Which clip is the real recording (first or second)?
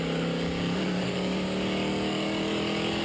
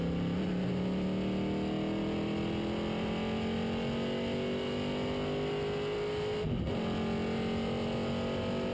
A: second